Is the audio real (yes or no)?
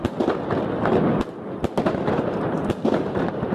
yes